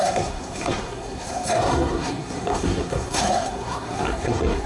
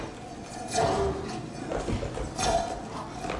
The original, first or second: second